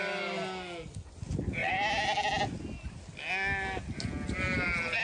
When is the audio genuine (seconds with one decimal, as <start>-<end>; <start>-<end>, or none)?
0.0-5.0